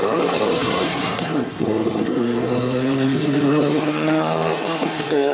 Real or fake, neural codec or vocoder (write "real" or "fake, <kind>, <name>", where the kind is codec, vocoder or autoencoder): fake, codec, SNAC